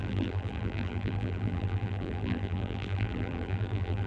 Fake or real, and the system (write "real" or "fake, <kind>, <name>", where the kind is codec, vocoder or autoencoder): fake, vocoder, BigVGAN v2